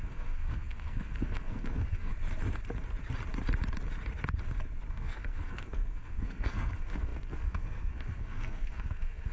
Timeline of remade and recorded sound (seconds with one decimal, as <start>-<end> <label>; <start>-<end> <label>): 0.0-2.1 remade; 2.1-4.9 recorded; 4.9-9.3 remade